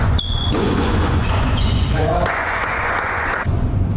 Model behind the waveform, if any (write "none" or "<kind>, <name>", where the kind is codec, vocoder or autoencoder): vocoder, Vocos